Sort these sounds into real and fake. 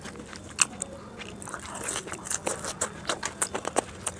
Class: real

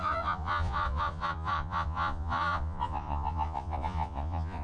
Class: fake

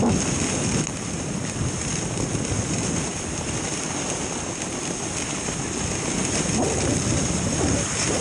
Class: real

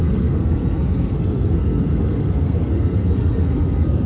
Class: fake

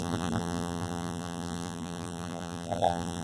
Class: fake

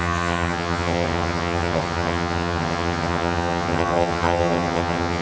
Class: fake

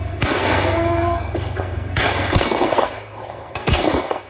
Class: fake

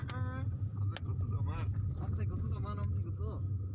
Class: real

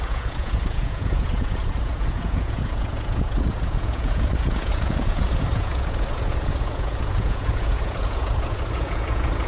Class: fake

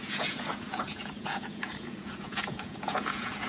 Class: fake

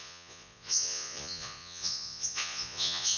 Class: fake